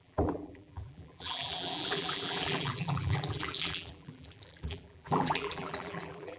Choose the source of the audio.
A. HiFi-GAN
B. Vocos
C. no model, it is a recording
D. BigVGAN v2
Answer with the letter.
D